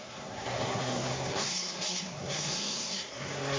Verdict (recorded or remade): remade